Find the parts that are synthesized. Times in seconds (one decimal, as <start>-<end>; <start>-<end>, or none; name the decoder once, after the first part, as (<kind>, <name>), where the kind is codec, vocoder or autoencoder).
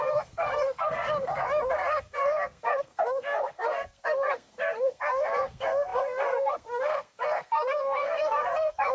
0.0-8.9 (codec, SNAC)